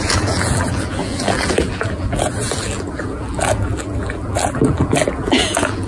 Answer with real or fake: fake